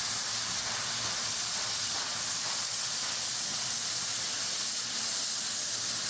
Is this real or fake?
real